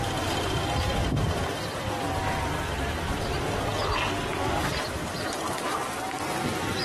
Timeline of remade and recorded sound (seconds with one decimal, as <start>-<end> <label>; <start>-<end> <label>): 0.0-3.7 remade; 3.7-4.5 recorded; 4.5-6.8 remade